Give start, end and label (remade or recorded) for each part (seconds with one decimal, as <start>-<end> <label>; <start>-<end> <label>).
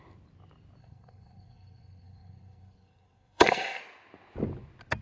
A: 0.0-0.8 recorded; 0.8-3.8 remade; 3.8-5.0 recorded